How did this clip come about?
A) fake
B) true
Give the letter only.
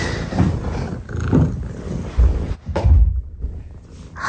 B